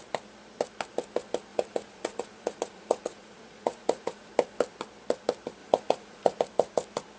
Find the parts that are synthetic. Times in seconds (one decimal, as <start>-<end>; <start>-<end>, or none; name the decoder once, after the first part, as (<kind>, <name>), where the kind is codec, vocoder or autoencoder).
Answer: 1.5-4.3 (vocoder, Vocos); 5.6-6.4